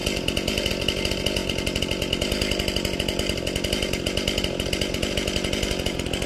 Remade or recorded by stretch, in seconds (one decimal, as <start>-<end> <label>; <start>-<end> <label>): 0.0-6.3 recorded